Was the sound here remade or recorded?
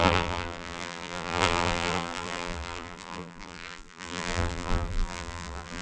remade